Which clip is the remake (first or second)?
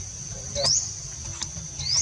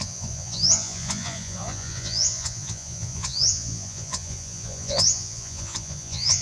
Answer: second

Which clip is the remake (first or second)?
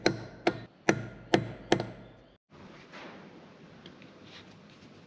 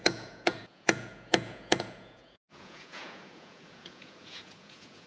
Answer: second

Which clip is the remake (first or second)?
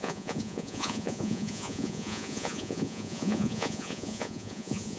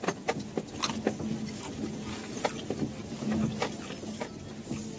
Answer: first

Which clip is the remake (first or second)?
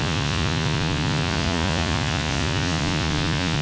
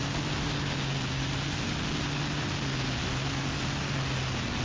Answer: first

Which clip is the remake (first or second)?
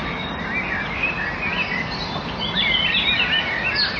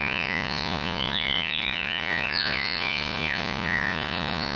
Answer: second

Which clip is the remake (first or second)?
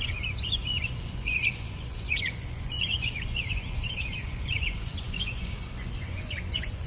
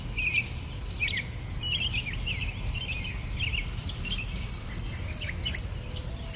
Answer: first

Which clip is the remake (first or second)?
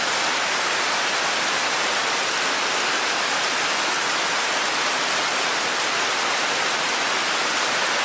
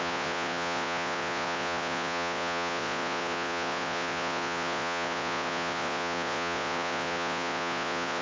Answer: second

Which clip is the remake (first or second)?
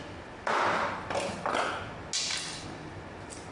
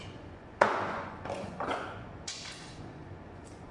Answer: second